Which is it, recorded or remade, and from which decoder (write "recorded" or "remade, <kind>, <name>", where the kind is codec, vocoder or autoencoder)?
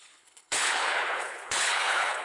remade, codec, HILCodec